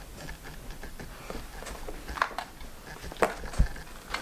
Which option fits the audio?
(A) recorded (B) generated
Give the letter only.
A